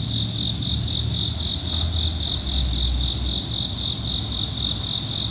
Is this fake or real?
real